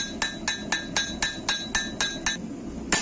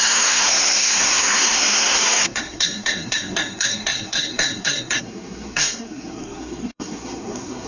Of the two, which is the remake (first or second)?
second